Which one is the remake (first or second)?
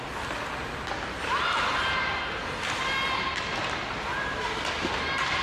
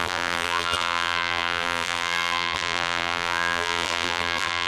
second